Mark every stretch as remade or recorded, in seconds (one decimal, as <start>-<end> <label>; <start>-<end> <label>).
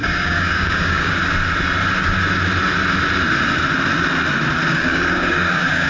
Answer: 0.0-1.2 remade; 1.2-4.7 recorded; 4.7-5.9 remade